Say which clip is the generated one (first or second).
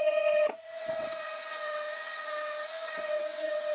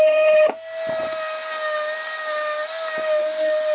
first